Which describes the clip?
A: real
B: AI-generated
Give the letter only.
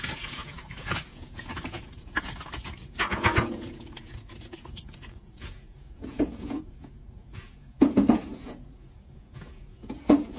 B